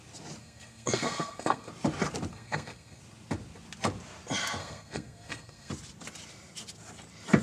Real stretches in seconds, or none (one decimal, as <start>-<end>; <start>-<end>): 0.0-0.4; 1.7-2.3; 3.0-4.6; 5.7-7.4